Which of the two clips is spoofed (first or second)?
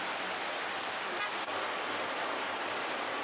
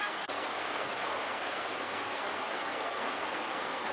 second